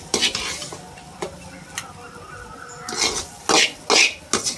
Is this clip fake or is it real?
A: real